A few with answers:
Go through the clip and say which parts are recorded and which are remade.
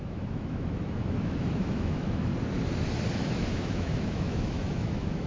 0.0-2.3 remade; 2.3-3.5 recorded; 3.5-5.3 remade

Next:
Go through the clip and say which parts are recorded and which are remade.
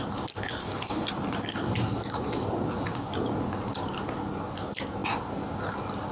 0.0-0.6 recorded; 0.6-1.1 remade; 1.1-6.1 recorded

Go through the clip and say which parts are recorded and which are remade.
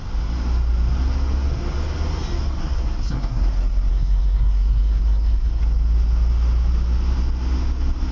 0.0-2.6 recorded; 2.6-3.5 remade; 3.5-3.9 recorded; 3.9-5.6 remade; 5.6-8.1 recorded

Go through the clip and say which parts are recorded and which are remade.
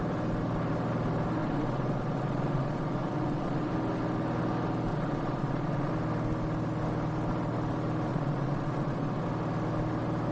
0.0-1.4 recorded; 1.4-3.7 remade; 3.7-4.9 recorded; 4.9-5.9 remade; 5.9-8.1 recorded; 8.1-9.2 remade; 9.2-10.3 recorded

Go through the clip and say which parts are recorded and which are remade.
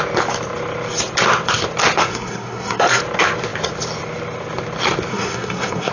0.0-2.1 recorded; 2.1-3.0 remade; 3.0-5.1 recorded; 5.1-5.9 remade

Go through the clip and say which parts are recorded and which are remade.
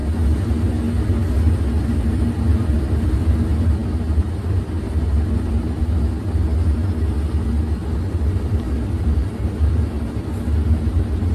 0.0-1.3 recorded; 1.3-5.8 remade; 5.8-8.1 recorded; 8.1-11.3 remade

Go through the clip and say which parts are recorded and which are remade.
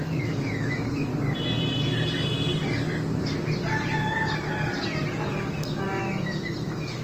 0.0-1.1 remade; 1.1-5.3 recorded; 5.3-7.0 remade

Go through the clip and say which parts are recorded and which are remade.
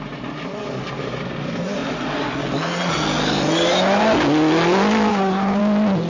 0.0-5.1 recorded; 5.1-5.6 remade; 5.6-6.1 recorded